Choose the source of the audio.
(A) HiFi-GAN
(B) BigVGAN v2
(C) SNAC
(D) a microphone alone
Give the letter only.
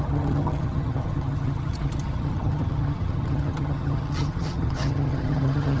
A